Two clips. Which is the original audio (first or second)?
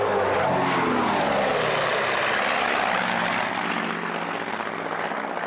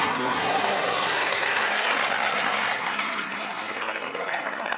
first